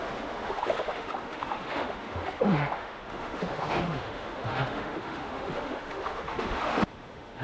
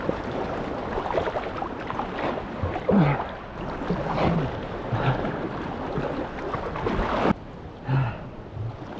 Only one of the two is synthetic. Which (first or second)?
first